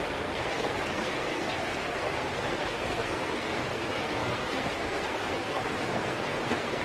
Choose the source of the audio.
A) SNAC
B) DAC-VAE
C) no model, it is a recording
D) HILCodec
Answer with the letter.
A